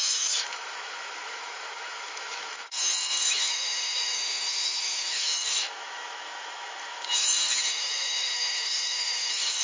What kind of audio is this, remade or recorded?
remade